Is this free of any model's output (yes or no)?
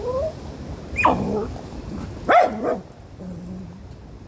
yes